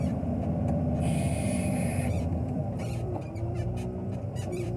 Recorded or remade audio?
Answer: remade